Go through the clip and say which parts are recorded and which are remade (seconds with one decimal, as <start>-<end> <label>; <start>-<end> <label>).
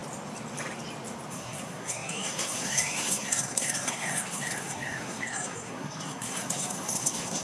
0.0-1.3 recorded; 1.3-7.4 remade